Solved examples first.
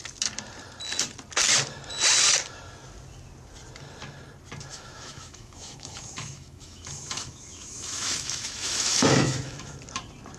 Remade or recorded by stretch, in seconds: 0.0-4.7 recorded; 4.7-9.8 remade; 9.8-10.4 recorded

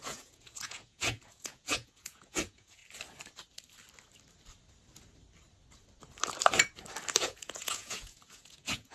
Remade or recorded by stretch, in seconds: 0.0-2.8 remade; 2.8-7.2 recorded; 7.2-8.9 remade

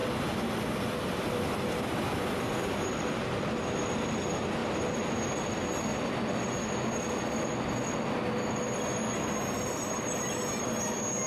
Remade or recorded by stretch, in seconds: 0.0-3.4 remade; 3.4-11.3 recorded

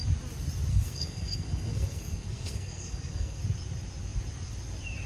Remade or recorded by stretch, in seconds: 0.0-0.7 recorded; 0.7-3.4 remade; 3.4-5.1 recorded

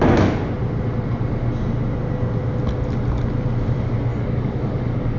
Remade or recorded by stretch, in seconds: 0.0-4.1 recorded; 4.1-5.2 remade